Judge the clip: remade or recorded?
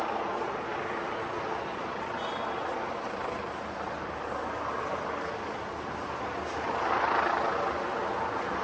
recorded